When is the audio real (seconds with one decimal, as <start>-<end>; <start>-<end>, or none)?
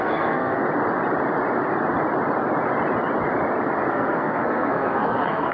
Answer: 0.6-3.9